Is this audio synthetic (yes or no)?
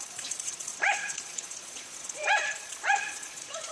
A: yes